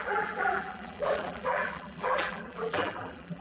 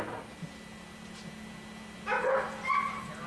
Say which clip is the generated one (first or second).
first